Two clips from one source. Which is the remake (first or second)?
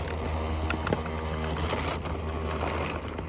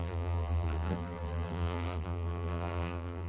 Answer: second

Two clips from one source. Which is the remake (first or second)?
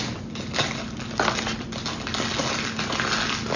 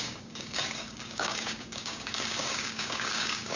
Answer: second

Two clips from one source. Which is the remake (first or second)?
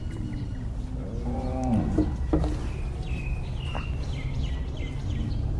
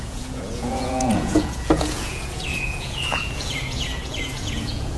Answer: second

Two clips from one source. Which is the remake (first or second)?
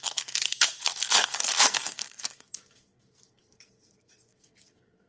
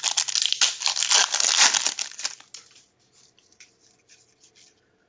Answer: first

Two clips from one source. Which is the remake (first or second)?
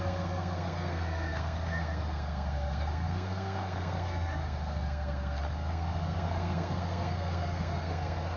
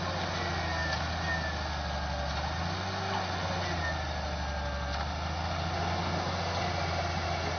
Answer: first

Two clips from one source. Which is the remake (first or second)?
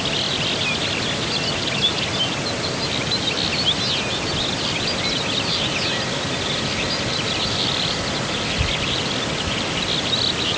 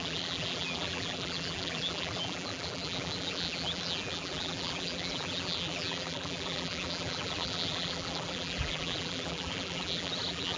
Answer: second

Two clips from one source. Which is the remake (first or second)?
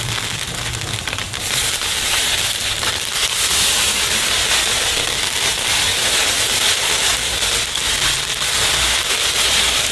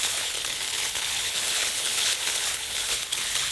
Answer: second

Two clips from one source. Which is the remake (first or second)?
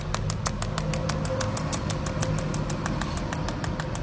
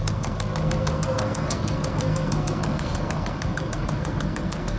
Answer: second